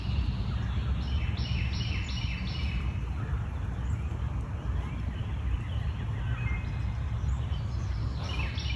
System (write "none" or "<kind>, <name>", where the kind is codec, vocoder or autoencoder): none